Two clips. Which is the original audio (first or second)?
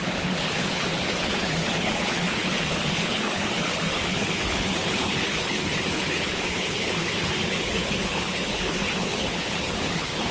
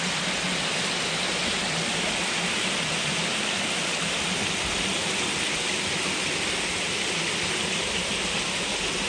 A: second